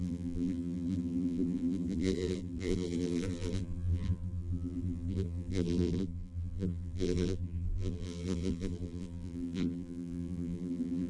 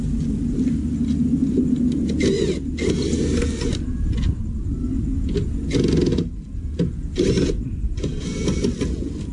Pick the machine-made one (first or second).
first